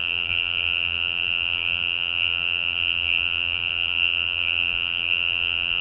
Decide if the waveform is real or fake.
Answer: fake